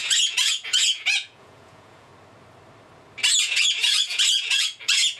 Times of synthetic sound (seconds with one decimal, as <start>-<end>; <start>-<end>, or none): 0.0-2.1; 3.3-5.2